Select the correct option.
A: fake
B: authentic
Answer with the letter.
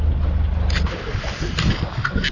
B